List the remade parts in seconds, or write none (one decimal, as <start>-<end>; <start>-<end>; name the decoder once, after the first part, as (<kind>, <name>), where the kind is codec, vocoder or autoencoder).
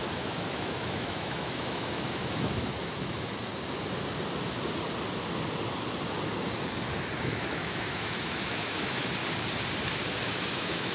0.0-3.5 (autoencoder, DAC-VAE); 7.2-9.2; 10.2-10.9